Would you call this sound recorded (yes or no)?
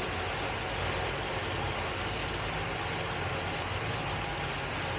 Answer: yes